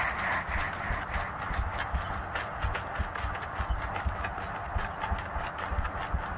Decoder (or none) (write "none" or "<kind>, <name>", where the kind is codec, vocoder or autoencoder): none